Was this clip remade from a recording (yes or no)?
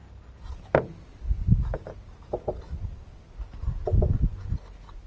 no